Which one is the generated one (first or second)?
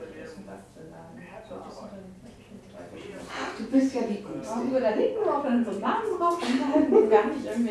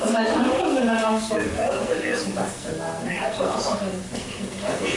second